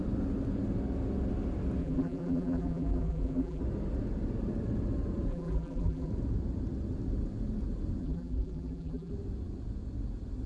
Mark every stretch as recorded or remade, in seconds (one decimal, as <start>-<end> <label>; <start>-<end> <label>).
0.0-1.8 recorded; 1.8-3.6 remade; 3.6-5.3 recorded; 5.3-6.1 remade; 6.1-8.0 recorded; 8.0-9.1 remade; 9.1-10.5 recorded